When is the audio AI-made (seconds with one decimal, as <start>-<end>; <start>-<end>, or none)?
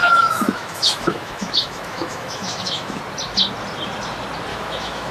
0.0-3.0; 4.5-5.1